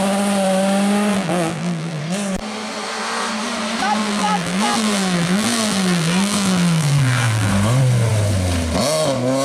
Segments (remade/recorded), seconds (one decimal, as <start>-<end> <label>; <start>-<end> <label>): 0.0-1.1 recorded; 1.1-2.0 remade; 2.0-4.0 recorded; 4.0-7.5 remade; 7.5-9.4 recorded